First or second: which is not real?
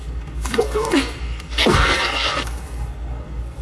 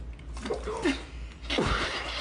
first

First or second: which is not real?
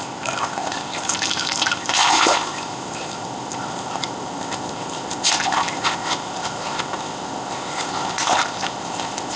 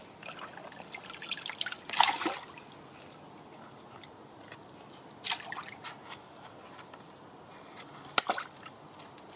first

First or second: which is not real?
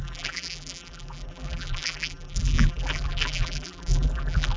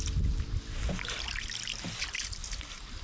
first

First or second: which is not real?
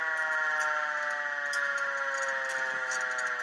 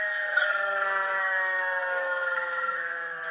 second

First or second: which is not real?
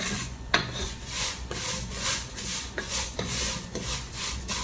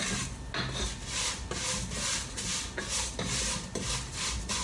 first